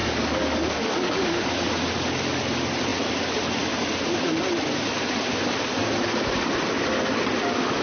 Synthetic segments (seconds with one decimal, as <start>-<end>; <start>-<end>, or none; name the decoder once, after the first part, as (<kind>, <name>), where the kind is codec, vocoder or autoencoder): 0.0-1.7 (codec, DAC)